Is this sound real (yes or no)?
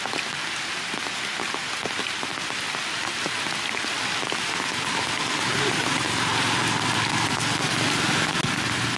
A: yes